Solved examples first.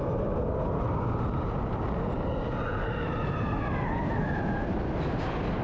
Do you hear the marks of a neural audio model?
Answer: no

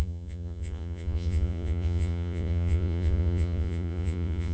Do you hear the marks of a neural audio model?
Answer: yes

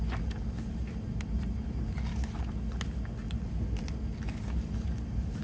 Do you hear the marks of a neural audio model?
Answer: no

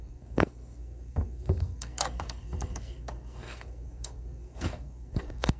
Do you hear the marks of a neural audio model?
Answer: yes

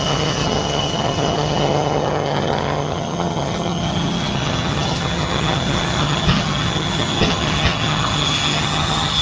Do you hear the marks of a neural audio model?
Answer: yes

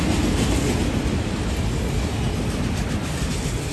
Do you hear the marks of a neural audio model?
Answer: no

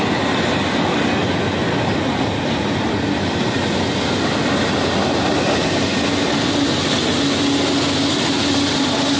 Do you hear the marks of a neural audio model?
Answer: no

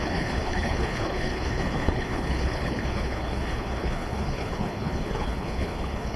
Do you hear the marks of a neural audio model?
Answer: yes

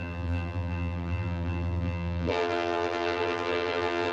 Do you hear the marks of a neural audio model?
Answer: yes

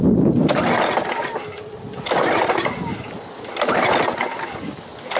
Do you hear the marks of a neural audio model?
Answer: no